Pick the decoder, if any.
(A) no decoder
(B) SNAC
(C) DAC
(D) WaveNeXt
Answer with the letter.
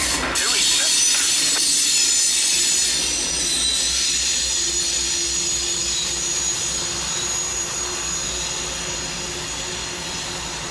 A